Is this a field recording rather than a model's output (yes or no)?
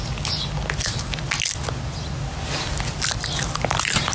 yes